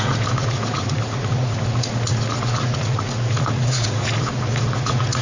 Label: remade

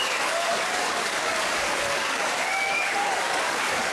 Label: remade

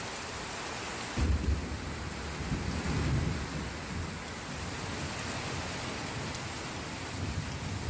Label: recorded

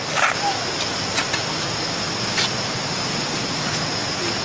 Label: recorded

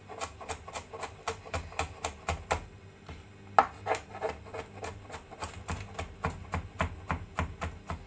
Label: recorded